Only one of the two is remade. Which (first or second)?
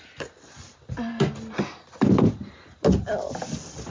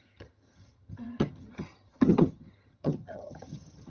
second